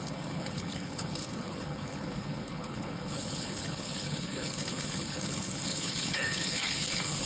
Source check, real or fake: fake